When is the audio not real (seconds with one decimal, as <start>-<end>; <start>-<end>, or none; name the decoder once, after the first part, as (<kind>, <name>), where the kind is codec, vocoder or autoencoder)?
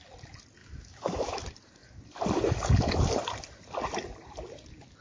0.6-1.4 (autoencoder, DAC-VAE)